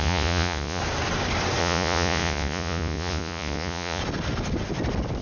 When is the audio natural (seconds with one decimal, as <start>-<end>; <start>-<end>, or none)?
0.8-1.6; 4.0-5.2